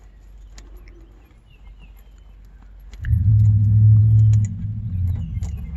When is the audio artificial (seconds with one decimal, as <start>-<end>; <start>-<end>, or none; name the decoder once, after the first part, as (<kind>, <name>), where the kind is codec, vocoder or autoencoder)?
none